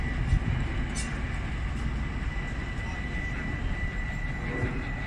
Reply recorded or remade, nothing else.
recorded